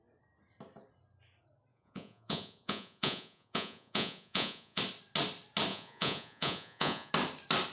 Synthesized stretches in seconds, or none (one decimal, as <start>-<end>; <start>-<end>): 1.7-4.8; 5.7-7.1